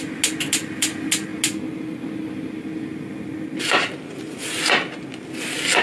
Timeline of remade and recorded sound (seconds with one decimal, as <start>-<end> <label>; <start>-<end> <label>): 0.0-5.8 recorded